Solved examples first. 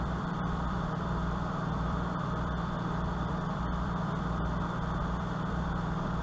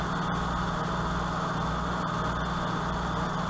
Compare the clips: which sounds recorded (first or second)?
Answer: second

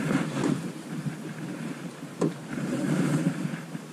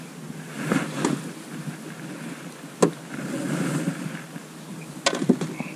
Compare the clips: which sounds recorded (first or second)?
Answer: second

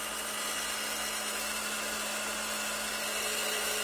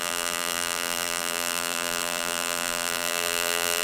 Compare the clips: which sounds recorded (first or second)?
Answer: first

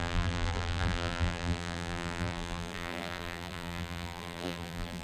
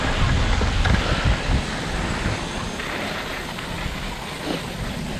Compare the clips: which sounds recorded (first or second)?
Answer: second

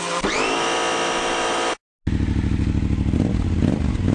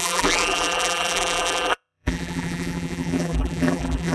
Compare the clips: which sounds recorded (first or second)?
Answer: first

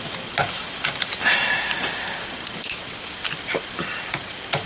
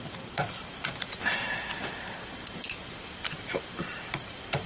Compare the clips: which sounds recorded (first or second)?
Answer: first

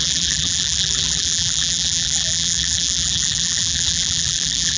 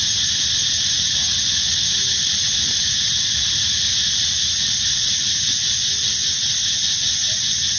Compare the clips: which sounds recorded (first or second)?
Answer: second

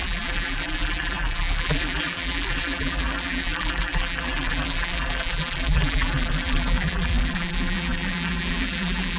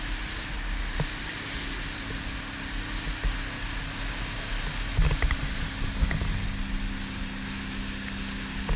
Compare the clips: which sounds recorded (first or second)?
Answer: second